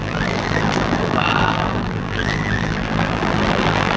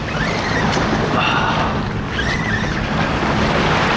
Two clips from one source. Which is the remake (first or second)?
first